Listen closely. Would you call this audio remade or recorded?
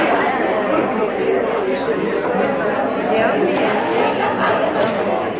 recorded